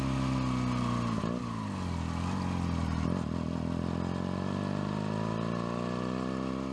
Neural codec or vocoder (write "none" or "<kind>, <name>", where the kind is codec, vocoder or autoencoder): none